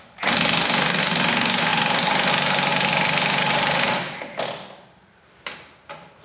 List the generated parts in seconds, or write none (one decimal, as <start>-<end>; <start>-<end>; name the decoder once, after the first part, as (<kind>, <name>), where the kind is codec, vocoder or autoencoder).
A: 1.7-2.3 (vocoder, BigVGAN v2); 2.7-6.2